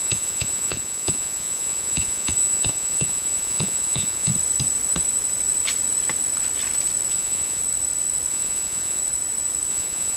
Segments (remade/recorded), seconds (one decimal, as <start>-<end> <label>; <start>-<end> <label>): 0.0-4.3 remade; 4.3-7.1 recorded; 7.1-7.6 remade; 7.6-8.3 recorded; 8.3-9.0 remade; 9.0-9.7 recorded; 9.7-10.2 remade